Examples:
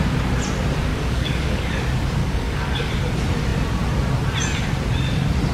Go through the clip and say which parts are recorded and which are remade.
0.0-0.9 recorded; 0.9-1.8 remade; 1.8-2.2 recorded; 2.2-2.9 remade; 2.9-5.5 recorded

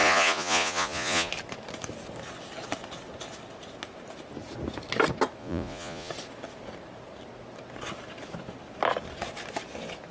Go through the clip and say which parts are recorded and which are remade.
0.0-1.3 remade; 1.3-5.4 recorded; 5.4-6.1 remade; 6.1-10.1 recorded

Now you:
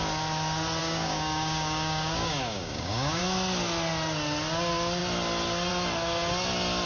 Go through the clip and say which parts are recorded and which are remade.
0.0-0.8 recorded; 0.8-3.2 remade; 3.2-6.9 recorded

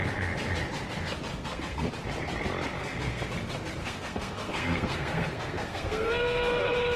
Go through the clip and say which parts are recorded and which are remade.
0.0-1.3 recorded; 1.3-1.9 remade; 1.9-2.8 recorded; 2.8-3.3 remade; 3.3-3.8 recorded; 3.8-6.6 remade; 6.6-7.0 recorded

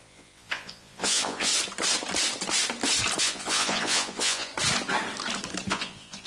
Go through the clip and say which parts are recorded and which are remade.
0.0-1.5 remade; 1.5-3.2 recorded; 3.2-4.5 remade; 4.5-5.7 recorded; 5.7-6.3 remade